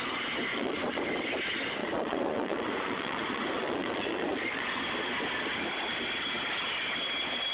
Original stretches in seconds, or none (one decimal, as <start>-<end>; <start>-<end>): 0.0-0.5; 1.0-1.8; 4.8-7.5